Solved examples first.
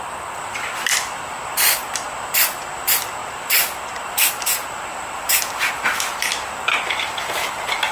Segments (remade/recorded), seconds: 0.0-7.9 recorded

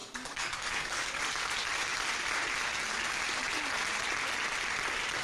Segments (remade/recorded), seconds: 0.0-1.2 remade; 1.2-5.2 recorded

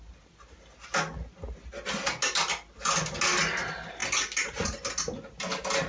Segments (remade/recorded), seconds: 0.0-5.9 recorded

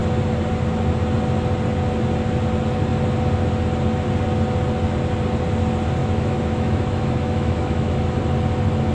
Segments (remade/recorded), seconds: 0.0-6.0 recorded; 6.0-8.1 remade; 8.1-8.9 recorded

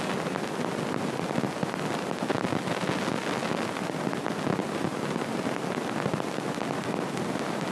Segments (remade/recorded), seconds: 0.0-7.7 recorded

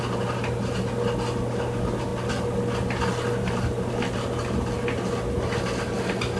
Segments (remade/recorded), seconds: 0.0-6.4 recorded